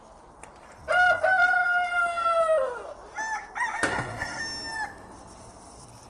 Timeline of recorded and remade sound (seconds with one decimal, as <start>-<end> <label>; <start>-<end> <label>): 0.0-3.9 recorded; 3.9-4.4 remade; 4.4-6.1 recorded